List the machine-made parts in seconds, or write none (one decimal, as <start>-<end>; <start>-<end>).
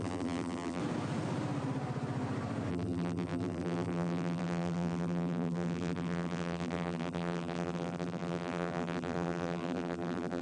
0.0-0.8; 2.7-10.4